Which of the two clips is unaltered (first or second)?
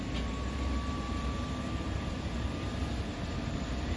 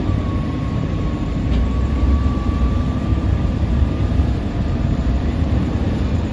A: first